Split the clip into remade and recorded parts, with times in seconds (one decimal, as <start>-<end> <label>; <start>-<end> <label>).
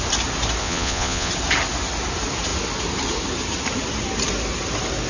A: 0.0-0.6 recorded; 0.6-1.3 remade; 1.3-5.1 recorded